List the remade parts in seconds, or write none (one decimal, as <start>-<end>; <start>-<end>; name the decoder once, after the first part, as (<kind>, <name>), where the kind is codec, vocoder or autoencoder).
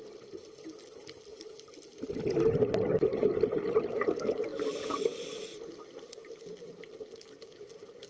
4.5-5.6 (vocoder, BigVGAN v2)